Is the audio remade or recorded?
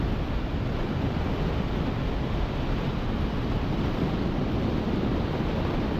recorded